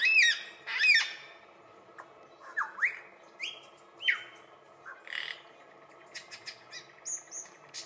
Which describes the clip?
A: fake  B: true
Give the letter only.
B